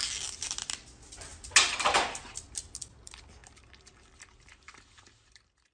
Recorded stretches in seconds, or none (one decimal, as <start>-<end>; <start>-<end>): 0.0-5.7